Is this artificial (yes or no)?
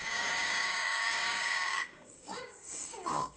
yes